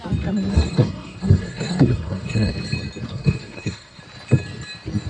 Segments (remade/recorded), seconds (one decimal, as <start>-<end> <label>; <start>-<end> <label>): 0.0-0.5 recorded; 0.5-2.5 remade; 2.5-3.1 recorded; 3.1-4.0 remade; 4.0-5.1 recorded